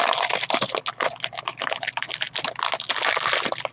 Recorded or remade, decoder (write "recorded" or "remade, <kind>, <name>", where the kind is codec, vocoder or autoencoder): recorded